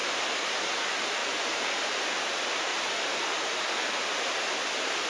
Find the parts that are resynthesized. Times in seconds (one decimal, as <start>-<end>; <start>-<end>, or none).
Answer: 0.0-0.6; 1.2-1.8; 2.7-3.7